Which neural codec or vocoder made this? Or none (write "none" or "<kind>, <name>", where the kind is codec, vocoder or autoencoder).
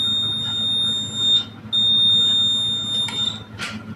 none